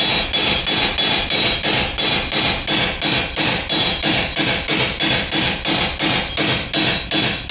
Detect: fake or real real